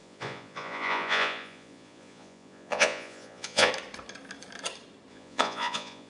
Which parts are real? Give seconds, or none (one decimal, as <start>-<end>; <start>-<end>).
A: 3.7-5.1